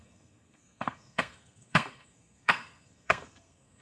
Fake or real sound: fake